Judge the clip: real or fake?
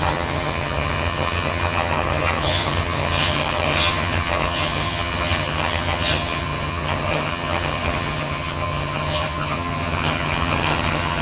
fake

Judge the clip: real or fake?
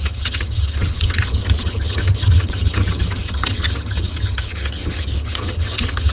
fake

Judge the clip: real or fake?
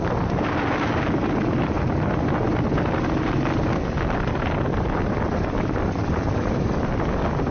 real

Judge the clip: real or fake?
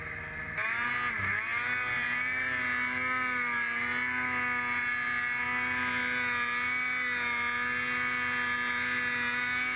real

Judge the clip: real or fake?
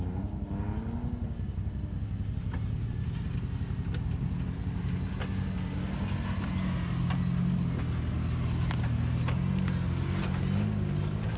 real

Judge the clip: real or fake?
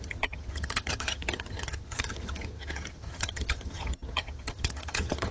fake